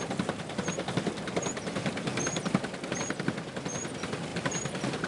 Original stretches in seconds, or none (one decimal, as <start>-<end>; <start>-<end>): 0.0-5.1

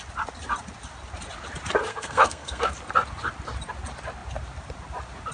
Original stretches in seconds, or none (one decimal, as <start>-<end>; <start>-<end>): 0.0-1.9; 2.7-5.3